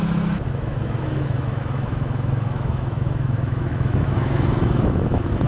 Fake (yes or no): yes